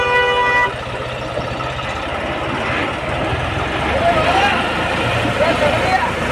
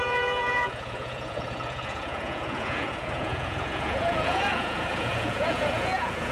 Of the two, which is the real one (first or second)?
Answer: first